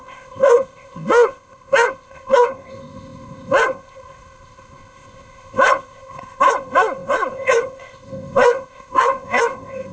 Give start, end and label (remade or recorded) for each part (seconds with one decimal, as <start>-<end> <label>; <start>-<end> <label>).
0.0-9.9 remade